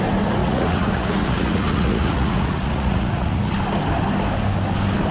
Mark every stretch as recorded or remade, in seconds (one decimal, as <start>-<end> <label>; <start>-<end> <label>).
0.0-0.4 recorded; 0.4-3.5 remade; 3.5-5.1 recorded

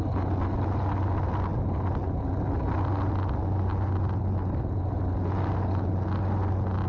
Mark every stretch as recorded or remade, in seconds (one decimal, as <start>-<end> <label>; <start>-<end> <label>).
0.0-6.9 recorded

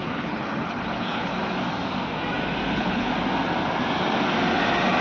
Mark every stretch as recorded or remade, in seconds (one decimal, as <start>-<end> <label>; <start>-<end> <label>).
0.0-1.3 remade; 1.3-2.7 recorded; 2.7-3.1 remade; 3.1-5.0 recorded

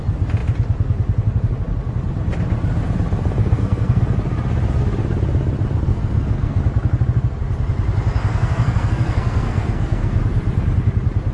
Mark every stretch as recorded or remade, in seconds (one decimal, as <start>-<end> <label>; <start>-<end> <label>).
0.0-3.4 recorded; 3.4-4.0 remade; 4.0-5.9 recorded; 5.9-6.6 remade; 6.6-8.3 recorded; 8.3-10.2 remade; 10.2-11.3 recorded

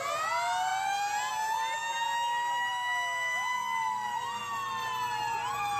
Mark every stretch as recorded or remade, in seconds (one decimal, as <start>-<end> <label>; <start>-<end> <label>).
0.0-5.8 recorded